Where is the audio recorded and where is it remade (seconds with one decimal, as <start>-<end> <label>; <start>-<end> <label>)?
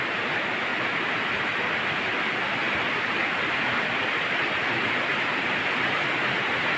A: 0.0-0.7 recorded; 0.7-4.3 remade; 4.3-6.8 recorded